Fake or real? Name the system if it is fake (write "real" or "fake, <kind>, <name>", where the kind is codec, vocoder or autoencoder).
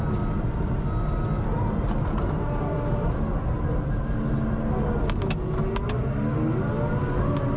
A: real